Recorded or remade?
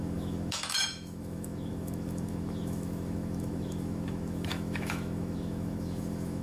remade